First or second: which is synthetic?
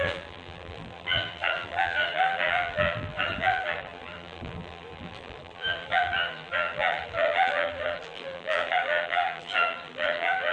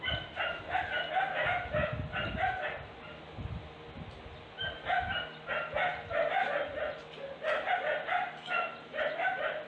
first